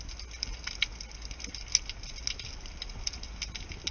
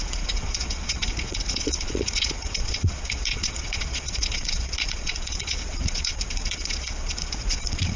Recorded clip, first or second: first